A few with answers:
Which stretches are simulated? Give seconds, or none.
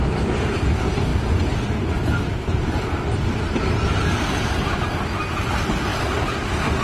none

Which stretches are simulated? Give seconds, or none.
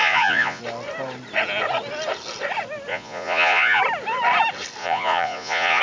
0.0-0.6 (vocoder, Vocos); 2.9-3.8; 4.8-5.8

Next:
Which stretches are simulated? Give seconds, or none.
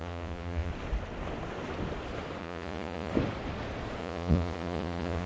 0.0-0.7 (vocoder, Vocos); 2.4-3.1; 4.0-5.3